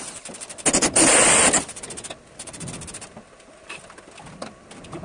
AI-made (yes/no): no